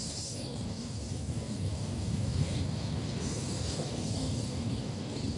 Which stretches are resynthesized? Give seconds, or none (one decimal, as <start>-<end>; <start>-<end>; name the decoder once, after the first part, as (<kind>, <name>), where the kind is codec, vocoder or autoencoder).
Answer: 0.0-5.4 (codec, DAC)